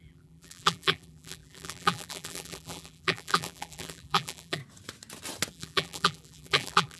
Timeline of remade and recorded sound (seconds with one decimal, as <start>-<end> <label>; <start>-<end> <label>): 0.0-4.6 remade; 4.6-5.5 recorded; 5.5-7.0 remade